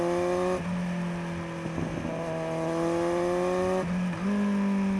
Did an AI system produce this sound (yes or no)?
no